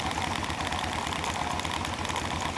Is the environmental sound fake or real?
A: real